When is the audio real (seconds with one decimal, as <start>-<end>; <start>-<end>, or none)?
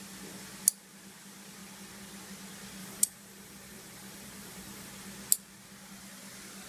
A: 0.0-2.8; 4.9-6.7